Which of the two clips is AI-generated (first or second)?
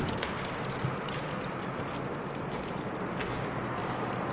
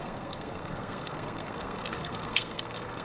second